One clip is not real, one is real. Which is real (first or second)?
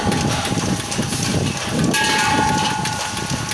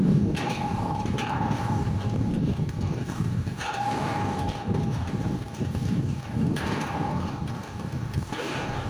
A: first